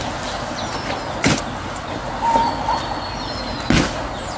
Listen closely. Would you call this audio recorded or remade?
recorded